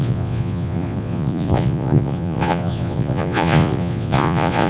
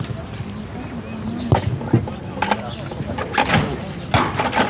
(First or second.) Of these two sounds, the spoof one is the first